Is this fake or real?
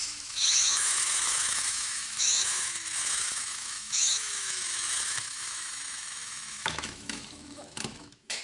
fake